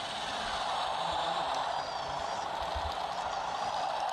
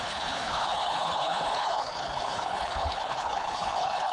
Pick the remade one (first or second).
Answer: second